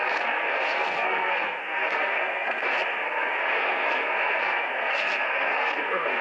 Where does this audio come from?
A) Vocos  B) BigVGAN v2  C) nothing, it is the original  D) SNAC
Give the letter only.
D